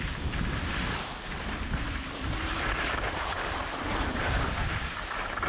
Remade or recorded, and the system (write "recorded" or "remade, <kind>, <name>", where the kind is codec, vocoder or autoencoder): recorded